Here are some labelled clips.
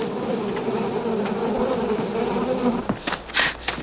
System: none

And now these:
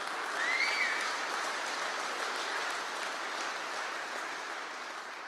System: none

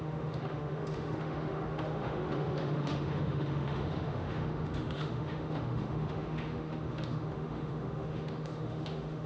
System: autoencoder, DAC-VAE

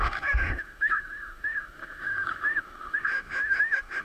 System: autoencoder, DAC-VAE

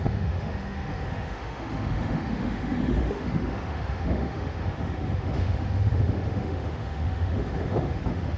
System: autoencoder, DAC-VAE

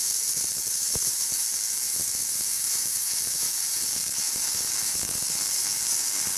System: autoencoder, DAC-VAE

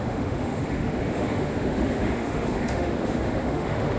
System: autoencoder, DAC-VAE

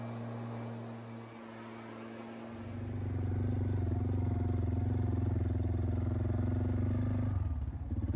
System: none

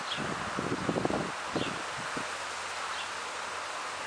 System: none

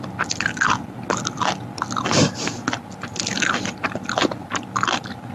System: none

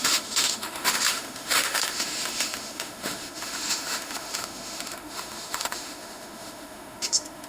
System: autoencoder, DAC-VAE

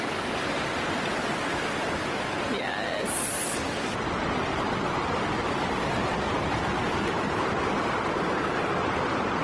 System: none